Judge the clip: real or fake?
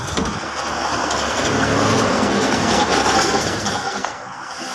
fake